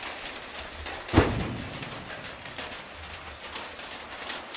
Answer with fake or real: real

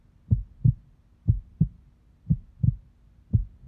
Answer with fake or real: real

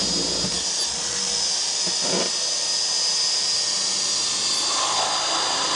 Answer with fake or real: real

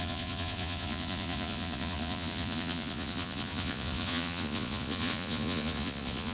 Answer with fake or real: fake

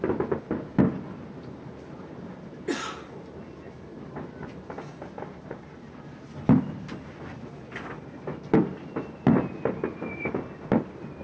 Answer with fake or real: real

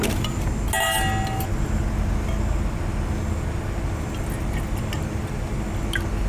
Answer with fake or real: real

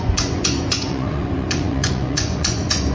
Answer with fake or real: fake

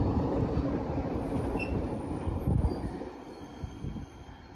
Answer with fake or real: real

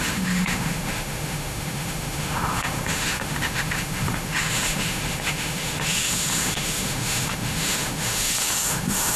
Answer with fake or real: fake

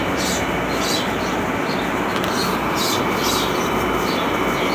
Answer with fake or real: real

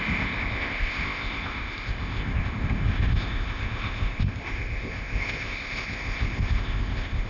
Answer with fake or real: fake